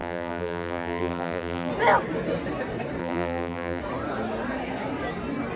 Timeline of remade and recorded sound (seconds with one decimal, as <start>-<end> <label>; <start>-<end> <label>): 0.0-1.7 remade; 1.7-3.0 recorded; 3.0-3.8 remade; 3.8-5.6 recorded